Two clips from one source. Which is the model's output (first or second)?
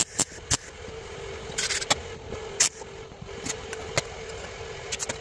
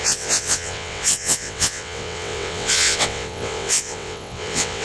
second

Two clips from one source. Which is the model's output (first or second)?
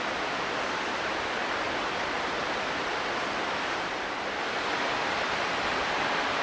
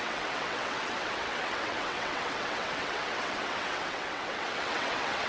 second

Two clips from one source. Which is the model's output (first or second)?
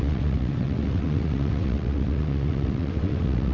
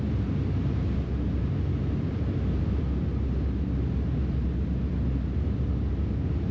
first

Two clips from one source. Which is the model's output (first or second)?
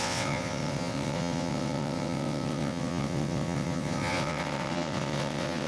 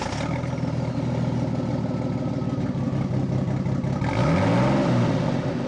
first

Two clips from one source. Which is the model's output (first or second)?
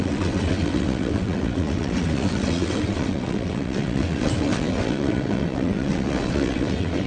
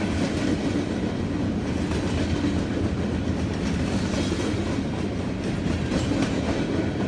first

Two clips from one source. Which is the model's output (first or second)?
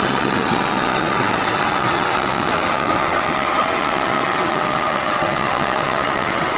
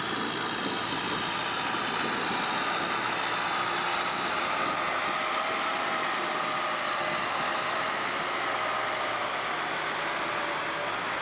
first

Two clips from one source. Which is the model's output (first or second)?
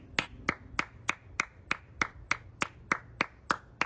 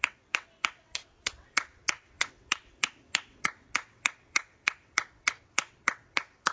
second